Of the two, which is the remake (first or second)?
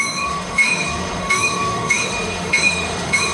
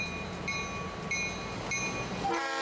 first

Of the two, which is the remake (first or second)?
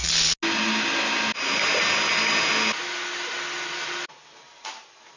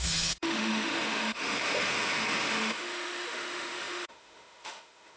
second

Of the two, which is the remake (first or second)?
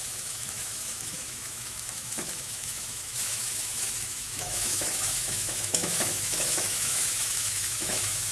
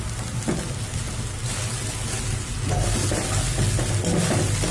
first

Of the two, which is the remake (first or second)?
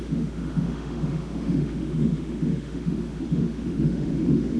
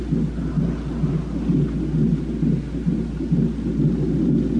first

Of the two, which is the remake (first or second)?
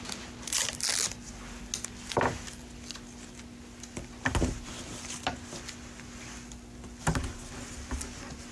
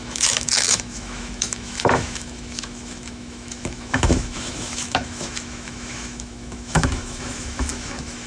second